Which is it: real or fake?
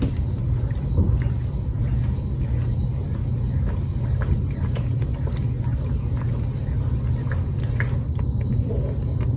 real